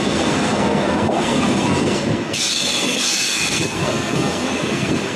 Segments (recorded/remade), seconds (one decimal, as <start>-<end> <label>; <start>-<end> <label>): 0.0-5.2 remade